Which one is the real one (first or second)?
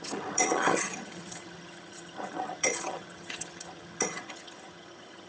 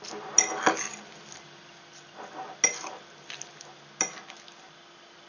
second